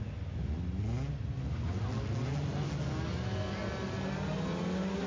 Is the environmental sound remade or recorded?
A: recorded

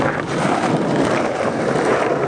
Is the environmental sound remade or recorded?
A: remade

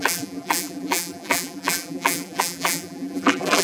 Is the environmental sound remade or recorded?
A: remade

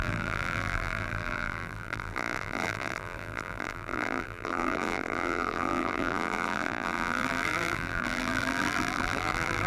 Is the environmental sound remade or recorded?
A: remade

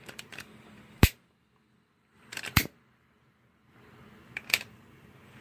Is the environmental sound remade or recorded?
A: remade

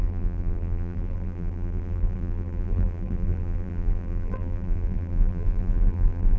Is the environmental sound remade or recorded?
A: remade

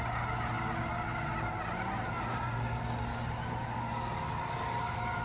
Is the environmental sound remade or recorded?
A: recorded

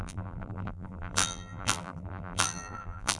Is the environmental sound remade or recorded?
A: remade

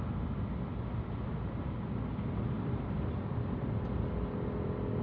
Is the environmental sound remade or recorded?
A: recorded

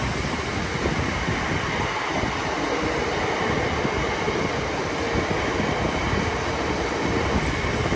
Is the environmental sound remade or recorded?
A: recorded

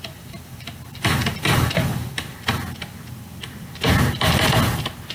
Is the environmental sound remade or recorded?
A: recorded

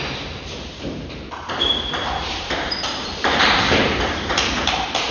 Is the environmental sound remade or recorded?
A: remade